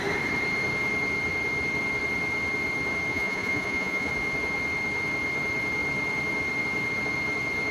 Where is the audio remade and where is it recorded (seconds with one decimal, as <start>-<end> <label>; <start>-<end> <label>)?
0.0-3.1 recorded; 3.1-4.1 remade; 4.1-7.7 recorded